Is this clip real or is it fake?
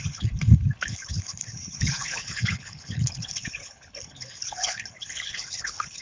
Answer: fake